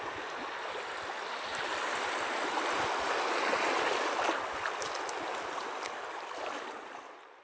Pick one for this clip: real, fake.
real